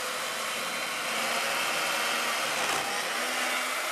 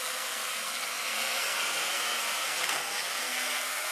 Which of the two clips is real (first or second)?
first